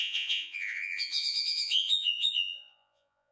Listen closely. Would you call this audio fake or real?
fake